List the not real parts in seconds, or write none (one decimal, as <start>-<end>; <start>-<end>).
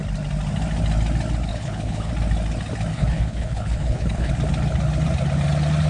1.5-2.1; 2.9-4.3